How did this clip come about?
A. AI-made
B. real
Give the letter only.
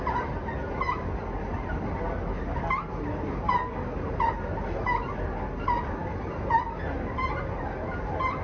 B